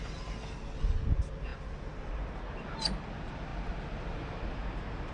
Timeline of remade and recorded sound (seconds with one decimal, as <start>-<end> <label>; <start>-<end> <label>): 0.0-5.1 recorded